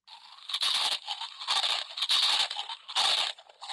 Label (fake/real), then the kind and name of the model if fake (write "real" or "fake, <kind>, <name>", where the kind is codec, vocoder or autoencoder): real